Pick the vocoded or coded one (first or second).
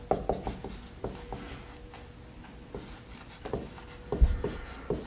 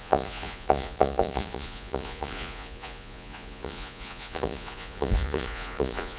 second